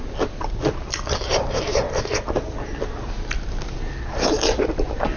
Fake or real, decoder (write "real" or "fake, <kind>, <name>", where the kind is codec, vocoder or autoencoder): real